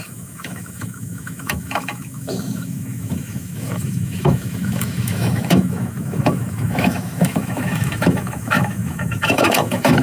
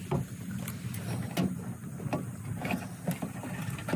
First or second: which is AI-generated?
first